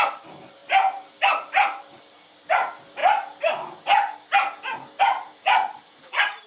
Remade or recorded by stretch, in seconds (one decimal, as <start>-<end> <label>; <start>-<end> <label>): 0.0-3.0 remade; 3.0-5.0 recorded; 5.0-6.5 remade